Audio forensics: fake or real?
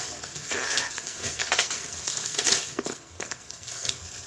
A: fake